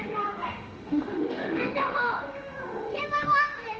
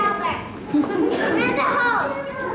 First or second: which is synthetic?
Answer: first